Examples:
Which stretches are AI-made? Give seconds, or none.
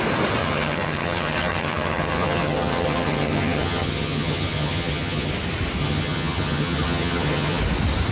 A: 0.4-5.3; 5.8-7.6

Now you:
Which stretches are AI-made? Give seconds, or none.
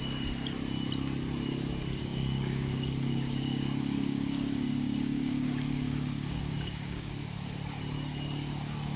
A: 2.0-7.1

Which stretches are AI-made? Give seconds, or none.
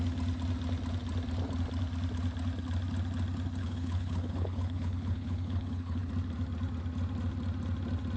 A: 3.6-6.1